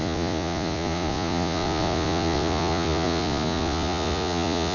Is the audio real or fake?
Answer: fake